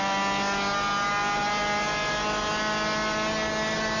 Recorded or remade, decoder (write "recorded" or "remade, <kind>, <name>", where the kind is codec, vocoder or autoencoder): recorded